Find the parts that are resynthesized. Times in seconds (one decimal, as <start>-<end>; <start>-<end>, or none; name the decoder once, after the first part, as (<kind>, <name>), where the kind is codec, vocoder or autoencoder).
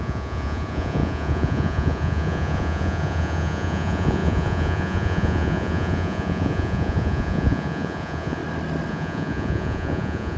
0.0-8.4 (vocoder, Vocos); 8.9-10.4